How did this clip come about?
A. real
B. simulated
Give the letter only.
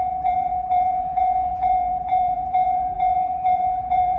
B